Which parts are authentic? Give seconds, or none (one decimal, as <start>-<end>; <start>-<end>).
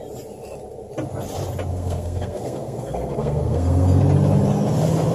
0.0-1.7; 4.0-5.1